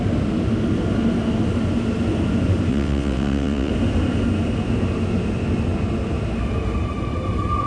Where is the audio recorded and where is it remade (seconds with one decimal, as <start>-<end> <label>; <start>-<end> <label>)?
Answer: 0.0-2.7 recorded; 2.7-3.7 remade; 3.7-7.7 recorded